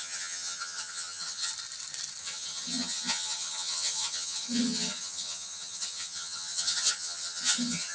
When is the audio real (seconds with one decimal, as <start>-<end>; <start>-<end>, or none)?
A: 1.5-2.2